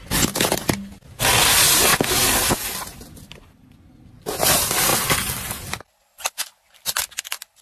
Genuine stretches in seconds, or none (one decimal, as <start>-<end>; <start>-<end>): 0.0-7.6